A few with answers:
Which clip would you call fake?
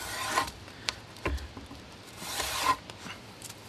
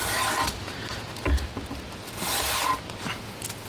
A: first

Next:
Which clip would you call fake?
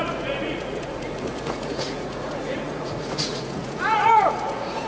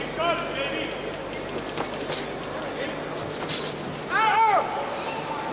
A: first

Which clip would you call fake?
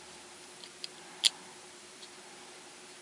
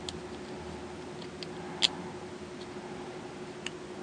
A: first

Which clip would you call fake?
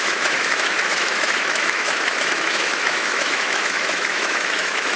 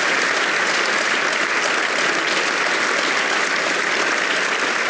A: first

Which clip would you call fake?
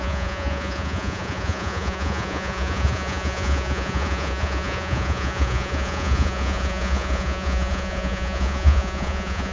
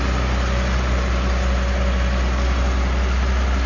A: first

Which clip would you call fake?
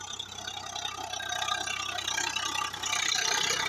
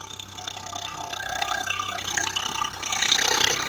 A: second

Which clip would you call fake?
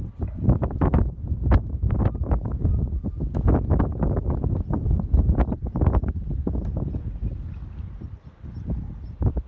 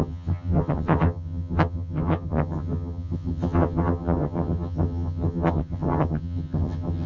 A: second